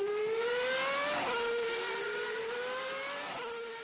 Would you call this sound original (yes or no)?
yes